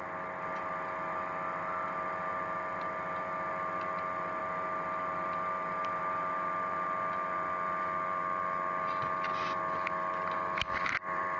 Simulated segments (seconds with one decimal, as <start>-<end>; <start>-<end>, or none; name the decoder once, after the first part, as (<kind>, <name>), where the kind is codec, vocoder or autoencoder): none